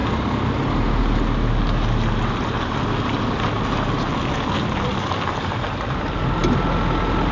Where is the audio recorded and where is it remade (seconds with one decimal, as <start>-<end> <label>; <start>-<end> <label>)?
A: 0.0-7.3 recorded